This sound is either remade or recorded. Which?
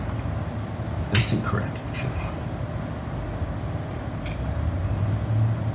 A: recorded